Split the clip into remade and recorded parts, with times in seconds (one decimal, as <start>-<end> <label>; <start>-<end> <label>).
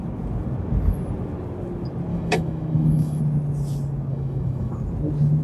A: 0.0-2.1 recorded; 2.1-3.2 remade; 3.2-4.1 recorded; 4.1-4.7 remade; 4.7-5.4 recorded